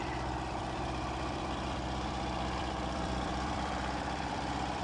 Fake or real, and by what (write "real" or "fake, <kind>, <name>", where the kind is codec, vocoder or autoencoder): fake, vocoder, BigVGAN v2